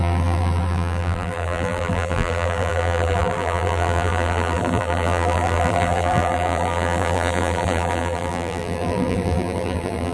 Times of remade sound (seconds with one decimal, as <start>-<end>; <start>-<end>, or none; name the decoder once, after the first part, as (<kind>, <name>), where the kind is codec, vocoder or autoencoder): 0.0-10.1 (vocoder, BigVGAN v2)